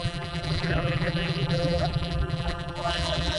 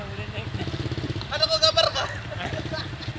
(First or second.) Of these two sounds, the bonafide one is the second